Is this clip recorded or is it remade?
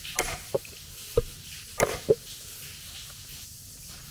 recorded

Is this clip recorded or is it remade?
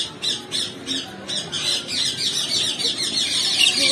remade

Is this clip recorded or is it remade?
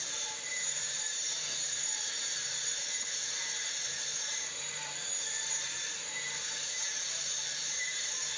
remade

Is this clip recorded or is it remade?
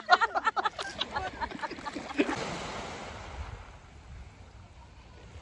recorded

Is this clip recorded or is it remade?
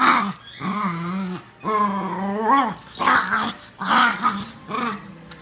recorded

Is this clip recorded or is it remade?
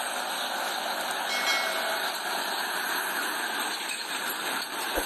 recorded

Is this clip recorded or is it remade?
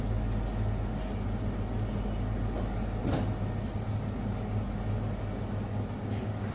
recorded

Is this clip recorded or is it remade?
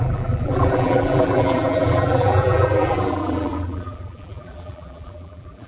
remade